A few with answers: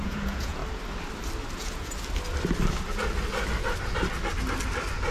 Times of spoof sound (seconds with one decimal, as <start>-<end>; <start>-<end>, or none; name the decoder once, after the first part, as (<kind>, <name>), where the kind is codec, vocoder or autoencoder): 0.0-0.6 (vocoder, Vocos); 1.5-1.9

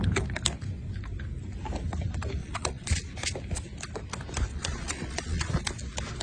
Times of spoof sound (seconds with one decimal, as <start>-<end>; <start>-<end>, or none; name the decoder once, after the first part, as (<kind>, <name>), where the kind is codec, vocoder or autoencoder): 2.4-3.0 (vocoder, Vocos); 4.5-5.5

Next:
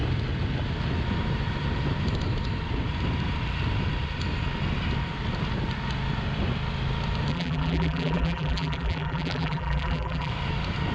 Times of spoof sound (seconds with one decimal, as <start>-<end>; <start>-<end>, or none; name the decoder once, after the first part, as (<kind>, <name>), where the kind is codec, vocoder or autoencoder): 7.3-10.3 (vocoder, BigVGAN v2)